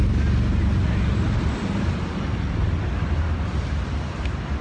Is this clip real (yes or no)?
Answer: yes